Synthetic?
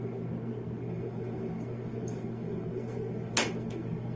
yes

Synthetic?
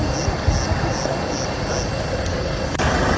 no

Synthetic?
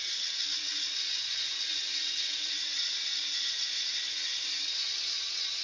yes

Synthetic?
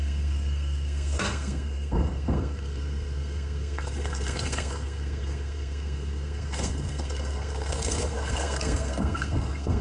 yes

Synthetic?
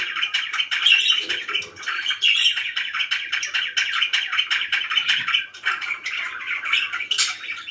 no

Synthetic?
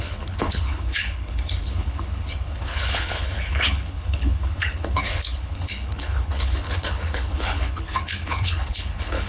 yes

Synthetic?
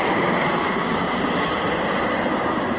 yes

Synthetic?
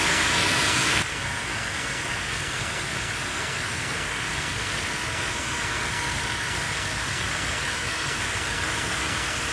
yes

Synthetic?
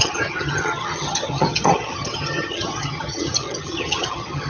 yes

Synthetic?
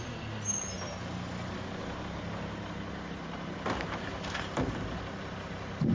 no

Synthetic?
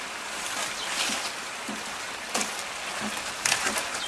no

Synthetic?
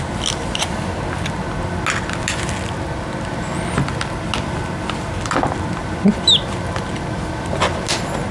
no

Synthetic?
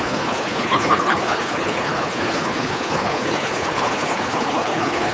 yes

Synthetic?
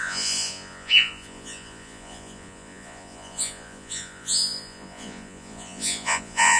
yes